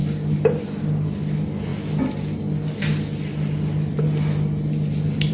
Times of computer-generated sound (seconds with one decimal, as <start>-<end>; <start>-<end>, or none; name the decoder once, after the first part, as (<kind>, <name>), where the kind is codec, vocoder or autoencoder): none